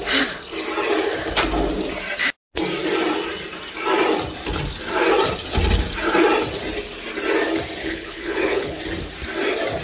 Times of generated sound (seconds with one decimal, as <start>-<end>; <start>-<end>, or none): 7.8-8.8